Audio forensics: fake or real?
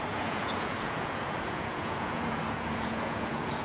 fake